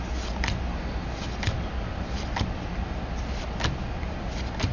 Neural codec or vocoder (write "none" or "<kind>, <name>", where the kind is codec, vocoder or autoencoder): none